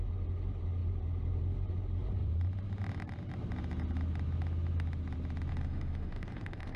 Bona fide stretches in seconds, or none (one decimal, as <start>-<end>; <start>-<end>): 0.0-5.5